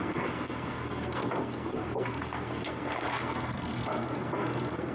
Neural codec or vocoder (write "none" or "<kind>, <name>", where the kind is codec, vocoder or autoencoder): codec, SNAC